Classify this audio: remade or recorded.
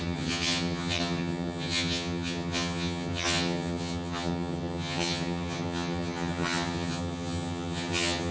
remade